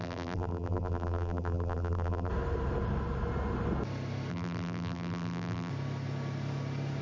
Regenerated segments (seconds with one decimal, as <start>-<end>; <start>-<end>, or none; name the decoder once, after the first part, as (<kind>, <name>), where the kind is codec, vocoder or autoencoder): 0.0-2.3 (vocoder, BigVGAN v2); 4.3-5.7